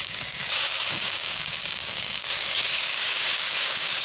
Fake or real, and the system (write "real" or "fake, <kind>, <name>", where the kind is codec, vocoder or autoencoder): fake, codec, DAC